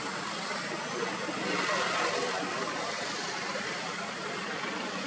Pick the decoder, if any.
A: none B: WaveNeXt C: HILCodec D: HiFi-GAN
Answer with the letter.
A